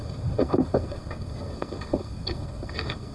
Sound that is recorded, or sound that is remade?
remade